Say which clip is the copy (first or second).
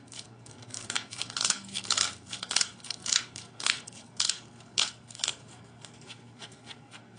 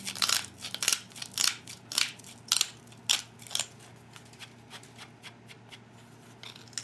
first